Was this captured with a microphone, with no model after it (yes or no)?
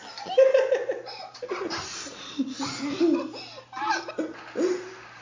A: yes